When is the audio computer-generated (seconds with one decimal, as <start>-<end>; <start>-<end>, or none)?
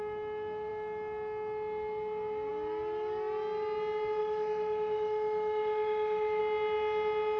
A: 4.2-6.4